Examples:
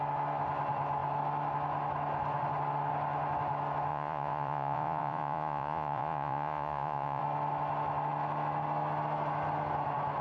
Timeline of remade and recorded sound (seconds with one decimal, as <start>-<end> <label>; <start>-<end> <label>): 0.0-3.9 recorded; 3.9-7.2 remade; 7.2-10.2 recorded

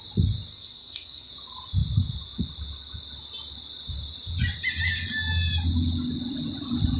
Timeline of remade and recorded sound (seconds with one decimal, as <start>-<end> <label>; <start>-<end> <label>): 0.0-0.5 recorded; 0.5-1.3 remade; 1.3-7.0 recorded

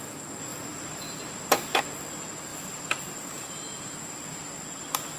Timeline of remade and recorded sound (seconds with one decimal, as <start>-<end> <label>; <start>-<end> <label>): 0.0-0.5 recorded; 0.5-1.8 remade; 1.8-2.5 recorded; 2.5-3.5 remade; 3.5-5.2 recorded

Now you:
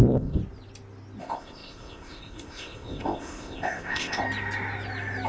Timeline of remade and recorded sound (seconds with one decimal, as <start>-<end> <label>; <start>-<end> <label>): 0.0-0.4 remade; 0.4-1.2 recorded; 1.2-4.2 remade; 4.2-5.3 recorded